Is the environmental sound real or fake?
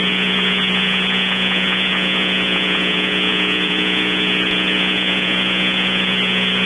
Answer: fake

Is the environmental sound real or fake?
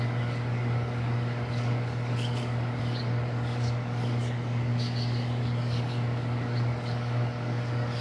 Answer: fake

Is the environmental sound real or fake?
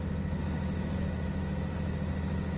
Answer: real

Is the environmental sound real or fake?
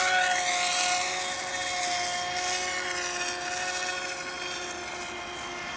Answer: real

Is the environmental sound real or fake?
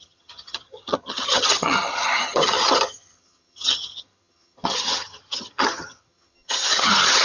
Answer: fake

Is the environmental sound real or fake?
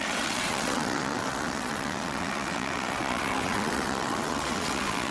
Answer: fake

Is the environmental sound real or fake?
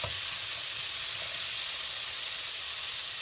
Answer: real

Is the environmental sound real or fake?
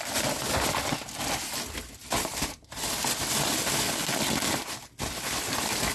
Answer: real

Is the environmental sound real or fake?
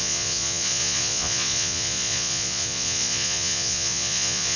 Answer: fake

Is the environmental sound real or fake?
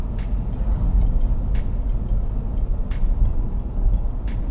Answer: real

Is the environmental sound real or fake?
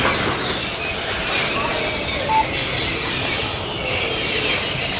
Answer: real